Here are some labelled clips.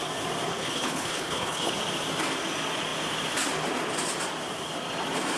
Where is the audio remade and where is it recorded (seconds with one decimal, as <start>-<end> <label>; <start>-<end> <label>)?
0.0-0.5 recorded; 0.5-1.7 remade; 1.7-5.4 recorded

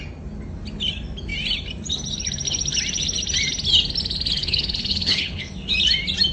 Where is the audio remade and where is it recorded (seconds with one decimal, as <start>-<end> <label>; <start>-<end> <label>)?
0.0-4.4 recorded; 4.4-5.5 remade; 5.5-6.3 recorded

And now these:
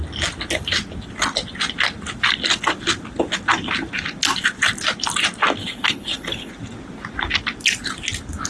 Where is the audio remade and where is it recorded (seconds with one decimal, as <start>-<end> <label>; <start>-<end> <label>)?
0.0-5.6 recorded; 5.6-6.5 remade; 6.5-8.5 recorded

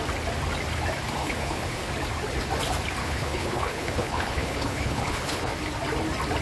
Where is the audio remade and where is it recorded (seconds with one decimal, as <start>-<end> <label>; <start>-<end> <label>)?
0.0-1.2 recorded; 1.2-1.9 remade; 1.9-3.0 recorded; 3.0-5.5 remade; 5.5-6.4 recorded

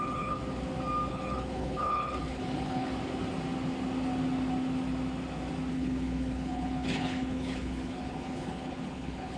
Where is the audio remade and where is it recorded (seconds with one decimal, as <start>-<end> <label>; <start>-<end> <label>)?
0.0-0.4 remade; 0.4-1.1 recorded; 1.1-2.9 remade; 2.9-5.7 recorded; 5.7-9.4 remade

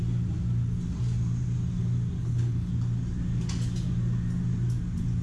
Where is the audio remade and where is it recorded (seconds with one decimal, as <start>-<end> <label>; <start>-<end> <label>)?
0.0-2.2 recorded; 2.2-2.7 remade; 2.7-5.2 recorded